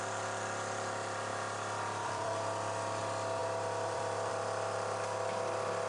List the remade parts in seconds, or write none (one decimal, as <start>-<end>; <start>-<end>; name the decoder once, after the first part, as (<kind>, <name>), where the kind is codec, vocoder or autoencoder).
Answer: 1.3-3.0 (vocoder, BigVGAN v2); 3.4-4.3